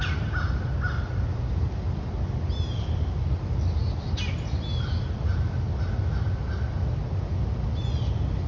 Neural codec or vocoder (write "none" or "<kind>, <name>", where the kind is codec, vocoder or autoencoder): none